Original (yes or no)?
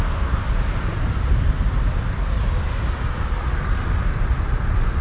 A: yes